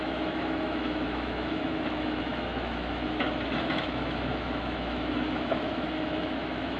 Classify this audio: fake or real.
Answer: fake